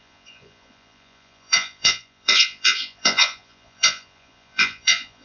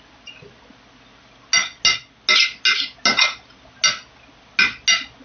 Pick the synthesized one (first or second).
first